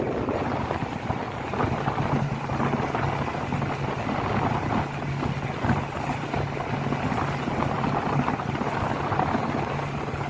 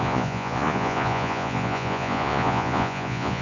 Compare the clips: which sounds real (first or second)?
first